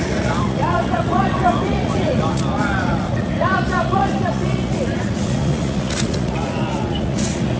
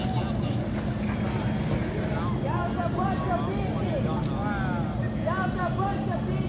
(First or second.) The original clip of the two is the second